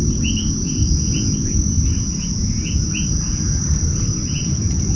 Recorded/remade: recorded